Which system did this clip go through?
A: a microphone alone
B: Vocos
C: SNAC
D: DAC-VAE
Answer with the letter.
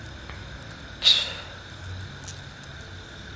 A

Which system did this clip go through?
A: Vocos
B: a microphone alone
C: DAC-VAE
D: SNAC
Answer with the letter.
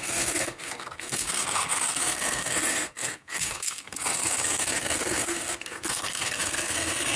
D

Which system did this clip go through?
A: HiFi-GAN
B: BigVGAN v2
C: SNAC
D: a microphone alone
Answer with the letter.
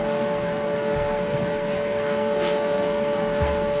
C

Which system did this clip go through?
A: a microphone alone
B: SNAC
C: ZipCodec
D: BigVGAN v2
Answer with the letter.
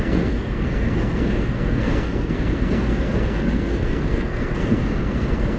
B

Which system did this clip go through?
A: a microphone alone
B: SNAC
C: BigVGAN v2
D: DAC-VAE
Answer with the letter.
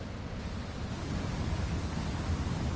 A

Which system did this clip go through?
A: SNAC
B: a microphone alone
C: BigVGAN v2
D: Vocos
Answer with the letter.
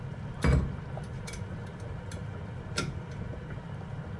B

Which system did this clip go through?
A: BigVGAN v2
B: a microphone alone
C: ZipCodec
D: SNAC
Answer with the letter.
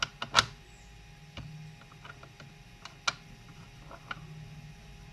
B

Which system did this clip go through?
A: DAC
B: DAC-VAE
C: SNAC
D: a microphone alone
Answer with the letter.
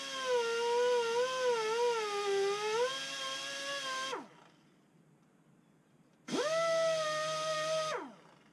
D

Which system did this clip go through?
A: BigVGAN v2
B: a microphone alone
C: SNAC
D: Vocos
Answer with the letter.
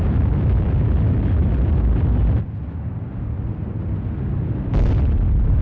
B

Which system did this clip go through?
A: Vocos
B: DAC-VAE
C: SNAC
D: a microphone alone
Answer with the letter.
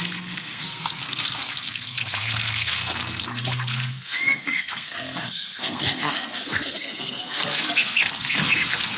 C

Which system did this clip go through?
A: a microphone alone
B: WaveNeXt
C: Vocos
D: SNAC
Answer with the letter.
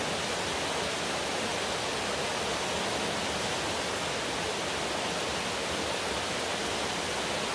A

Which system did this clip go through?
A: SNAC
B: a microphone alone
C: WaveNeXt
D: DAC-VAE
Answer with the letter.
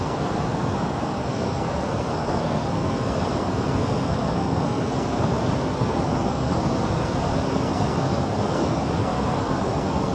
A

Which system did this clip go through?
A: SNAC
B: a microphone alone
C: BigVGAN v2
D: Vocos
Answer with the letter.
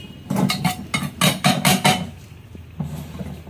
B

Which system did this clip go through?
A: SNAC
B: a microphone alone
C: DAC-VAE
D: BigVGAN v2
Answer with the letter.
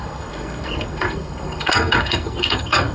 A